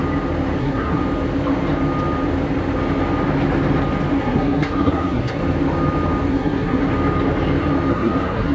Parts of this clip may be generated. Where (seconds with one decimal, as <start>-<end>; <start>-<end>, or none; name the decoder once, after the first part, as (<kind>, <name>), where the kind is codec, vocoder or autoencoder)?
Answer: 0.6-1.0 (codec, SNAC); 4.2-5.4; 6.3-6.8; 7.9-8.5